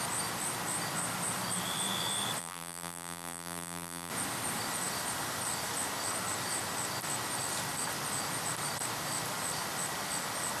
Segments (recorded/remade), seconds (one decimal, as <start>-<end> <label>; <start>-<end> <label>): 0.0-2.4 recorded; 2.4-4.1 remade; 4.1-10.6 recorded